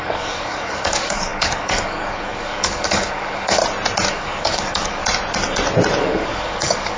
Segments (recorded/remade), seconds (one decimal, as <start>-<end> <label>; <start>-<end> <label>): 0.0-3.6 remade; 3.6-4.1 recorded; 4.1-5.0 remade; 5.0-6.0 recorded; 6.0-7.0 remade